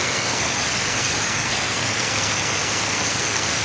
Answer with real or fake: fake